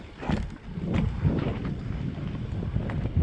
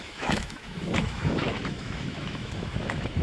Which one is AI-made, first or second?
second